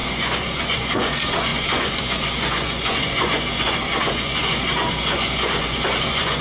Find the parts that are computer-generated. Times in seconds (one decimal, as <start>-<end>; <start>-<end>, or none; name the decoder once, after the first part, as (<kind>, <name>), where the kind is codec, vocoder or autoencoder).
0.0-6.4 (vocoder, Vocos)

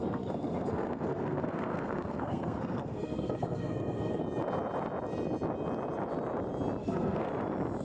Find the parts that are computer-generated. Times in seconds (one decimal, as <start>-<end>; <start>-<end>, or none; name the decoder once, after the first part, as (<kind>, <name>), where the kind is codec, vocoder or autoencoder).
0.0-4.2 (codec, SNAC); 6.8-7.3

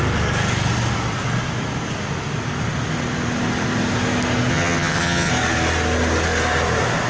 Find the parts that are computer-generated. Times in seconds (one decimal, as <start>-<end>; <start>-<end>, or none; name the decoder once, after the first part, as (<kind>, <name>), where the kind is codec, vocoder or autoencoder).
4.5-5.3 (vocoder, HiFi-GAN)

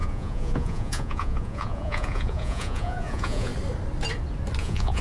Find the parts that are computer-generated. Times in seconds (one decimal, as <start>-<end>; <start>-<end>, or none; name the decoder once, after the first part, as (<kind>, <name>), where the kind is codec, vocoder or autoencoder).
0.0-3.5 (vocoder, Vocos); 4.6-5.0

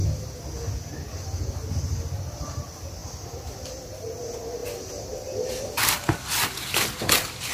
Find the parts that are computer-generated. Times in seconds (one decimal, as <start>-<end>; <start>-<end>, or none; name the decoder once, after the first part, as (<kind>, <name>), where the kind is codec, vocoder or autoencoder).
none